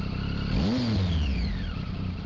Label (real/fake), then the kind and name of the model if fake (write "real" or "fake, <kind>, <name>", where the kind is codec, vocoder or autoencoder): real